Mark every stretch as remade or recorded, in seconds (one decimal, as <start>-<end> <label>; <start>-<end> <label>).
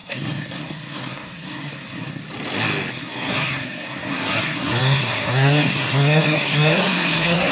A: 0.0-2.2 remade; 2.2-2.9 recorded; 2.9-7.5 remade